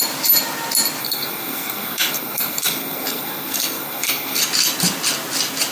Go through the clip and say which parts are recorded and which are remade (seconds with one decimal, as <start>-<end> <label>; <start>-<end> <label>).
0.0-1.0 recorded; 1.0-4.4 remade; 4.4-5.7 recorded